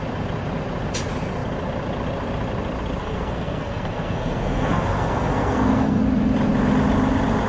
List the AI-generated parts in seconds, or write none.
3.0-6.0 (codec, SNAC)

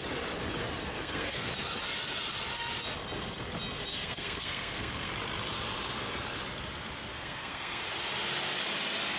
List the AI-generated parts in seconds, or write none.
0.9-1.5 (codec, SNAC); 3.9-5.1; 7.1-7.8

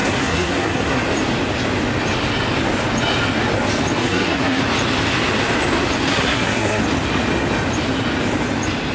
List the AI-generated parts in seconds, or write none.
0.0-1.0 (codec, SNAC); 4.0-4.6; 6.1-6.8

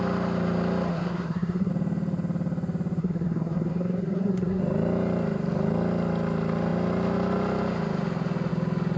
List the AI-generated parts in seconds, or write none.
0.9-1.7 (codec, SNAC); 3.0-4.6

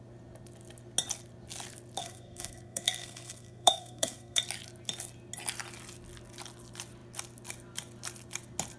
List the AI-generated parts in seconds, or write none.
2.0-4.4 (codec, SNAC)